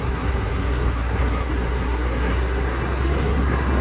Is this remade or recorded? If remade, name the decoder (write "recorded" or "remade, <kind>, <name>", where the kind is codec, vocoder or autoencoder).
remade, codec, SNAC